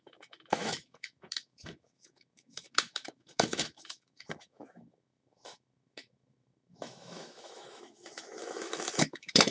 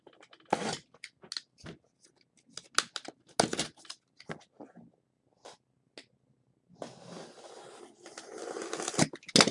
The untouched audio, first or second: second